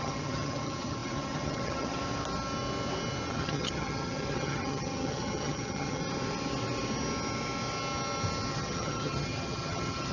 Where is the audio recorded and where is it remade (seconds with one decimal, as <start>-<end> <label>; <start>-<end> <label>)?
0.0-2.0 remade; 2.0-3.3 recorded; 3.3-6.0 remade; 6.0-8.5 recorded; 8.5-10.1 remade